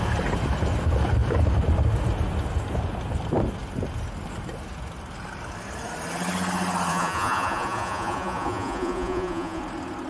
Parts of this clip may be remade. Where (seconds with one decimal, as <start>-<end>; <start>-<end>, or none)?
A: 6.9-9.6